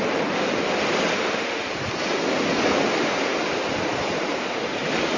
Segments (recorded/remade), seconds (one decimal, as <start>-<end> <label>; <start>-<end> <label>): 0.0-1.1 recorded; 1.1-1.6 remade; 1.6-5.2 recorded